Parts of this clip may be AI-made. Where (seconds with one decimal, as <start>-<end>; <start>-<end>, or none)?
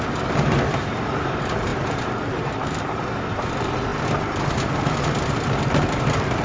0.0-3.9; 4.6-6.4